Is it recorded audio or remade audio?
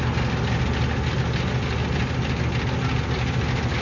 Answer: recorded